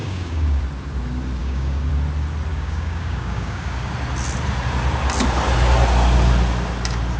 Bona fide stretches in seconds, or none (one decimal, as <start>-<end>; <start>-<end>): 0.6-1.4; 1.9-2.5; 3.9-7.2